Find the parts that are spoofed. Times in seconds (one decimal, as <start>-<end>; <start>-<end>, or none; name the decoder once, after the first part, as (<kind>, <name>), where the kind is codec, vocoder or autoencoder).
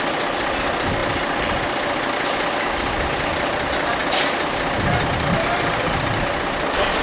none